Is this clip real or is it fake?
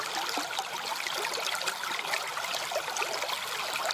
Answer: real